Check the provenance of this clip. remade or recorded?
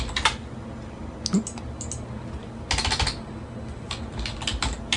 recorded